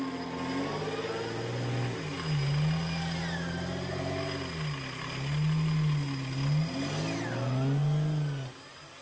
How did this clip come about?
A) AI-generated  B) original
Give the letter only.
B